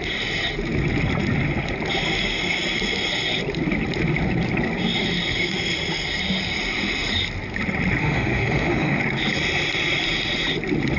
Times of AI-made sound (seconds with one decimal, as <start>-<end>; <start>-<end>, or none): 8.0-9.0

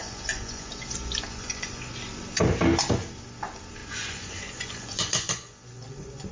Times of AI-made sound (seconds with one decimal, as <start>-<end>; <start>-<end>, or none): 0.0-0.7; 1.3-1.9; 3.8-6.3

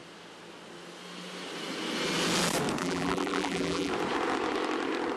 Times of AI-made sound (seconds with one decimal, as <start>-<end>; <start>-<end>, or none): 2.8-3.9

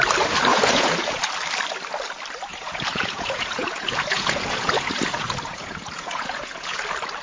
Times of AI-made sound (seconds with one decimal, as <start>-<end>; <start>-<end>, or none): 0.5-1.2; 2.5-6.8

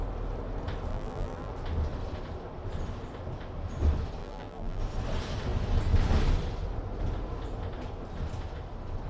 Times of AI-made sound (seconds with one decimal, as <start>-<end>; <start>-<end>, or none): 0.9-1.5; 4.2-4.8

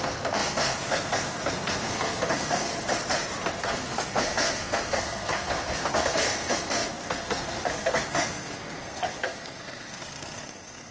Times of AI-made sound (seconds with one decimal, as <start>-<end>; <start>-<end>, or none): 0.0-2.7; 3.6-10.9